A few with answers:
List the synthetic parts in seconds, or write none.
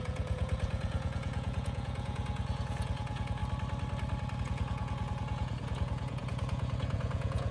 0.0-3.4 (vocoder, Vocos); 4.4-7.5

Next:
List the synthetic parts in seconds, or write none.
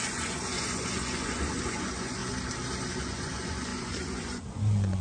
0.0-2.2 (vocoder, Vocos); 3.0-5.0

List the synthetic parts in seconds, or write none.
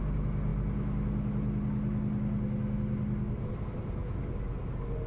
none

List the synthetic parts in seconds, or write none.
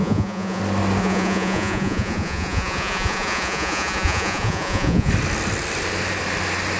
0.0-0.6 (vocoder, Vocos); 1.0-5.1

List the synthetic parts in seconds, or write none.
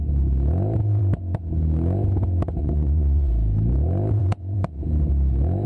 2.6-3.3 (vocoder, Vocos); 4.2-4.8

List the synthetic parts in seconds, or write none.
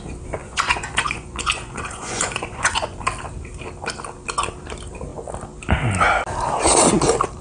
0.4-3.0 (vocoder, Vocos)